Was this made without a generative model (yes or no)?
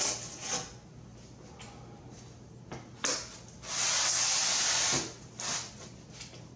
yes